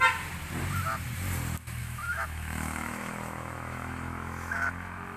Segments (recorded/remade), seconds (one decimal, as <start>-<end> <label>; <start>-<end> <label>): 0.0-1.8 recorded; 1.8-5.2 remade